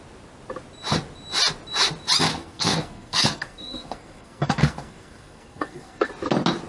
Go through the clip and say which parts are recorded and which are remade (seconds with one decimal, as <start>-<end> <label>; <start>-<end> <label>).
0.0-2.3 recorded; 2.3-6.1 remade; 6.1-6.7 recorded